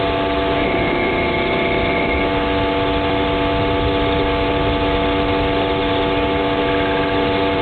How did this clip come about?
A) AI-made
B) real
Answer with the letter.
B